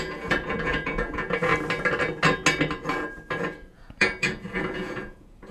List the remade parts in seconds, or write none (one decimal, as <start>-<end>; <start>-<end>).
0.0-1.5; 3.4-5.5